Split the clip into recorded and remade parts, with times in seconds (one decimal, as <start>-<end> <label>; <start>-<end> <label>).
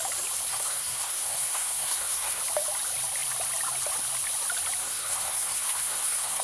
0.0-0.5 recorded; 0.5-2.4 remade; 2.4-4.8 recorded; 4.8-6.4 remade